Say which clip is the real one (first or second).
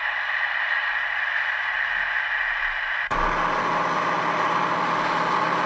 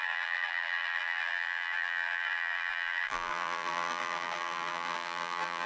first